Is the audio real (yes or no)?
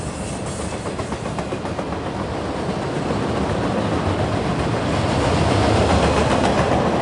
yes